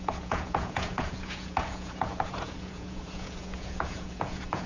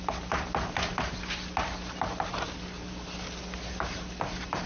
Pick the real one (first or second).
second